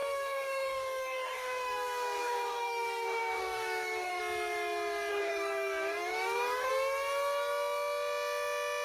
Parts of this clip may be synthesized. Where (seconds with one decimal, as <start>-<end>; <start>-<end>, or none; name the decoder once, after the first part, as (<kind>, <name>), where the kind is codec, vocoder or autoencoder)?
0.0-4.2 (codec, DAC); 5.1-6.7